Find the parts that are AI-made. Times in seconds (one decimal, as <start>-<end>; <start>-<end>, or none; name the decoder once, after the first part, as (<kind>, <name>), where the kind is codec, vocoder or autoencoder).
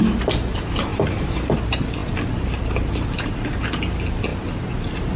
0.9-1.6 (vocoder, BigVGAN v2)